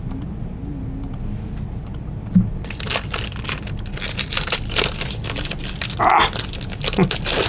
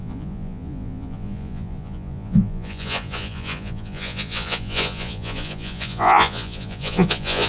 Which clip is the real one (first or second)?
first